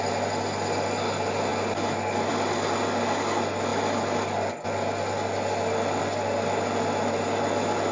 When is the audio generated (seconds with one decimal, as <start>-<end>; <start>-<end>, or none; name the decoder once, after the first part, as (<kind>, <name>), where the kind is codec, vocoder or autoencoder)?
none